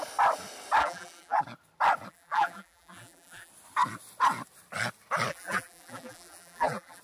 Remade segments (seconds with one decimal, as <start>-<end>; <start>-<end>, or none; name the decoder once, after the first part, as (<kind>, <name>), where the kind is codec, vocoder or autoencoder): 0.8-1.4 (vocoder, BigVGAN v2); 2.1-3.5; 5.3-7.0